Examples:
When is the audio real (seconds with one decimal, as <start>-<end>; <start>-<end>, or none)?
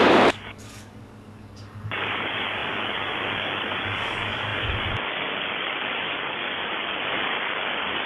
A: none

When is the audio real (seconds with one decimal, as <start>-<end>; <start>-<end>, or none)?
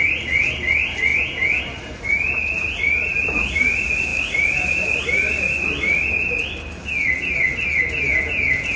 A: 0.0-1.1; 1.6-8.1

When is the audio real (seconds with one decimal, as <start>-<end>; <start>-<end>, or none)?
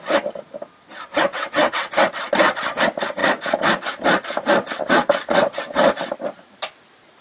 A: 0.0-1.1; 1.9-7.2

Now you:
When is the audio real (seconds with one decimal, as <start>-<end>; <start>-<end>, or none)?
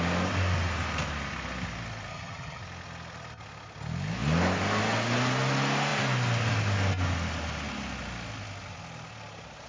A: 0.0-2.1; 2.6-9.7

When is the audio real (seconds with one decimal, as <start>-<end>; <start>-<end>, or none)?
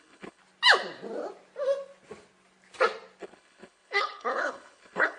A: 0.4-3.2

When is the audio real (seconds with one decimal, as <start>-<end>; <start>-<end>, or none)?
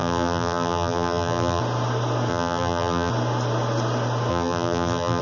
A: 1.6-2.3; 3.1-4.3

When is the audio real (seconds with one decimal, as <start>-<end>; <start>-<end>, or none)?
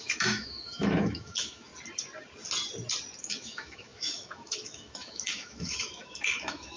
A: 1.7-3.2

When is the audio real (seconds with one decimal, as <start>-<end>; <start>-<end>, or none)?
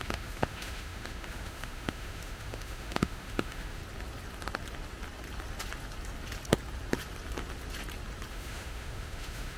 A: 3.8-8.3